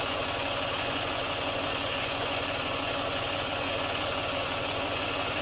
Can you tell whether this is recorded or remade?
remade